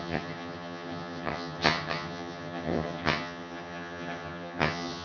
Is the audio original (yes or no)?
no